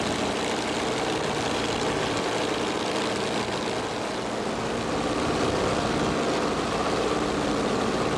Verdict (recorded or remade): recorded